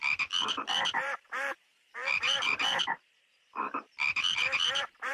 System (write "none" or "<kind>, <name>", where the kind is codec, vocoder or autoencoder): vocoder, BigVGAN v2